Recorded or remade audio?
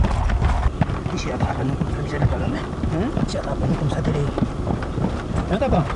recorded